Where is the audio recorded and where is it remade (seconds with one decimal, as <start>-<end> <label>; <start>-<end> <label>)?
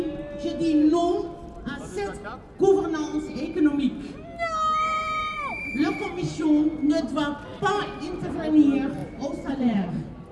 0.0-9.0 recorded; 9.0-9.9 remade; 9.9-10.3 recorded